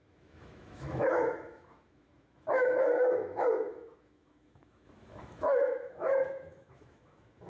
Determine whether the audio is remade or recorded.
remade